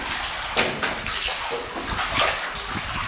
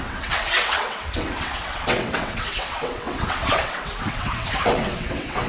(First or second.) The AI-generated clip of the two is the second